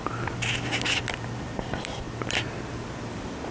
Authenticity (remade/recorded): recorded